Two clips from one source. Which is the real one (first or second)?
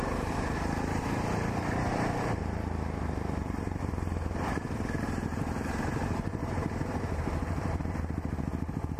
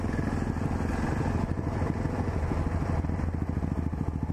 second